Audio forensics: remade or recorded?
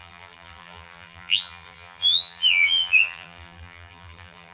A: remade